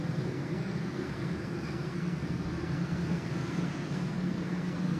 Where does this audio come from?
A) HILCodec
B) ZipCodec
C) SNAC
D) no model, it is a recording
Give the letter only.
C